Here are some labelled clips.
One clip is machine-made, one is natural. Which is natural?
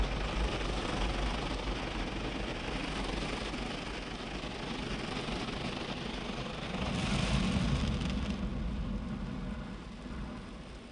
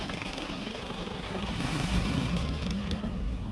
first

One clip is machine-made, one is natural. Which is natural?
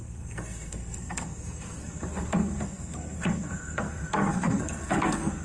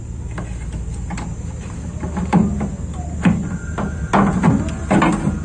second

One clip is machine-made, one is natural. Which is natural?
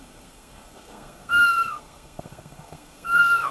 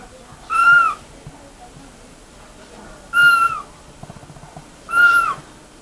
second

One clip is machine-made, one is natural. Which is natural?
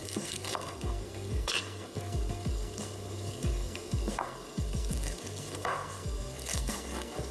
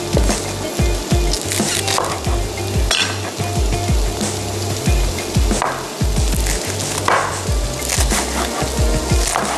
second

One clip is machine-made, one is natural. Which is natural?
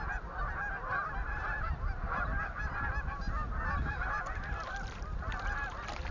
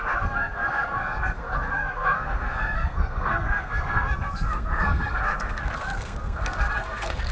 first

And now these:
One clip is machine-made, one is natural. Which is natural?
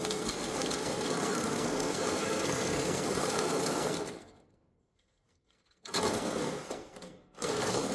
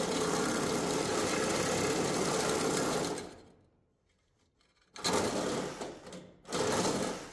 second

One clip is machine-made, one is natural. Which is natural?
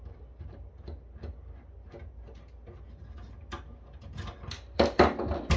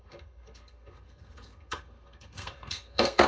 first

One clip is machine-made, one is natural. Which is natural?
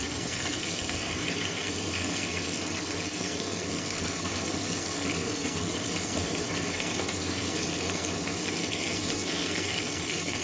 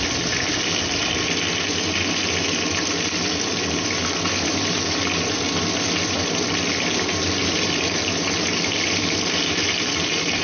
second